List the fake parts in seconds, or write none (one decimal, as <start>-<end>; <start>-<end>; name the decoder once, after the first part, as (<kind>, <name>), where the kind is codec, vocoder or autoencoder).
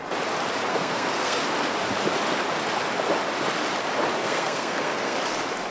0.7-1.4 (codec, SNAC); 4.2-5.2